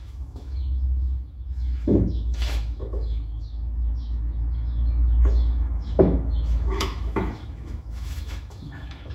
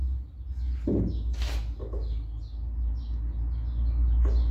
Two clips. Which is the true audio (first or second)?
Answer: second